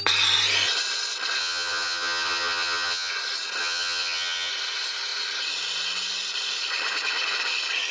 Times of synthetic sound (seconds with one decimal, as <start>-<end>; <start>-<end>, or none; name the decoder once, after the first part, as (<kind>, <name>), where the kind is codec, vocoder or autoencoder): 1.4-3.1 (vocoder, HiFi-GAN); 3.6-4.5